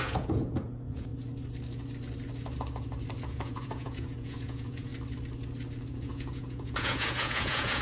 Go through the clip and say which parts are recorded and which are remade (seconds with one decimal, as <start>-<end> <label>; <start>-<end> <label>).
0.0-1.1 remade; 1.1-3.2 recorded; 3.2-4.9 remade; 4.9-5.9 recorded; 5.9-7.8 remade